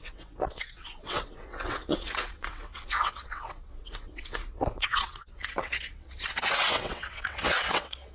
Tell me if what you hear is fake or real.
fake